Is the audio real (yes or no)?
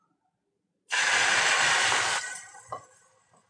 yes